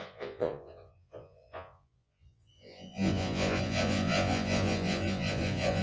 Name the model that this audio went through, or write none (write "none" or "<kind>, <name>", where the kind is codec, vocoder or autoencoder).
vocoder, Vocos